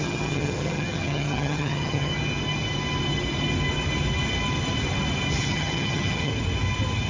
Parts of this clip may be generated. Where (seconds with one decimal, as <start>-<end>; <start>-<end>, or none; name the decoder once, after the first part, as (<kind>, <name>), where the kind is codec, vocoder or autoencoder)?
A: 0.0-2.1 (vocoder, HiFi-GAN); 5.4-6.3

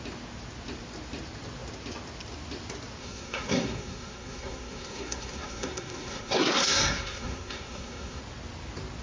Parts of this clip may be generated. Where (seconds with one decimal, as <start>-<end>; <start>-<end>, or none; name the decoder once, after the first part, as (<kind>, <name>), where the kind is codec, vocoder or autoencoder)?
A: 3.0-8.2 (codec, SNAC)

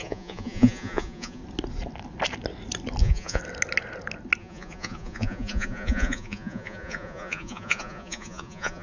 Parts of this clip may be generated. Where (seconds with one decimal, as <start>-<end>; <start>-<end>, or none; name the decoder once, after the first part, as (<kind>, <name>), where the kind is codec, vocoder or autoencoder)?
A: 0.0-1.4 (vocoder, Vocos); 3.0-3.4; 4.4-8.8

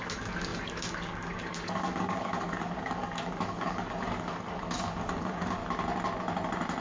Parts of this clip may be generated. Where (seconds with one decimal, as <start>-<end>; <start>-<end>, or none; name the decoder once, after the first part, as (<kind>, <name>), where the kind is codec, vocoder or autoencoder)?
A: 0.0-5.6 (codec, DAC)

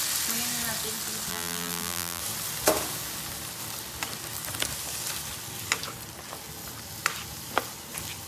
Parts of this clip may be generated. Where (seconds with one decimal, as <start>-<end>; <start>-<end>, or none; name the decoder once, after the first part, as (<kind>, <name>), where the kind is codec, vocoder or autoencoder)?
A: 1.3-2.2 (vocoder, BigVGAN v2)

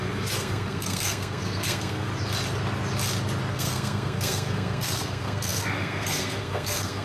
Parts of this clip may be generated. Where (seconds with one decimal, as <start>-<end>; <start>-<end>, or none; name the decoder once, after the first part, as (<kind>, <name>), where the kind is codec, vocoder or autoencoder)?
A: 0.0-2.1 (codec, SNAC); 3.5-7.0